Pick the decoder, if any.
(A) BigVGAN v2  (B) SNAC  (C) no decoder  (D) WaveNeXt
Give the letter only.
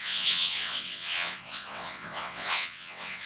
D